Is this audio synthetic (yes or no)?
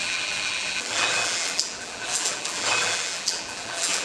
yes